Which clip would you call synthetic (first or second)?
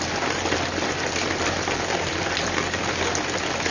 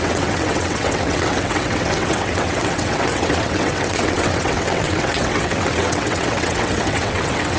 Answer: second